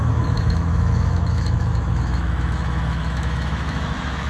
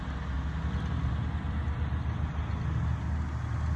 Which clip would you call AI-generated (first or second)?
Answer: first